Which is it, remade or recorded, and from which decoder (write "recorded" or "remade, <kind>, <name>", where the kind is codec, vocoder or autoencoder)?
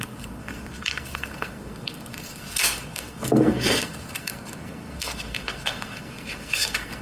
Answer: remade, codec, SNAC